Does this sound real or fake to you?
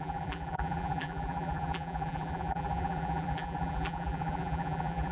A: fake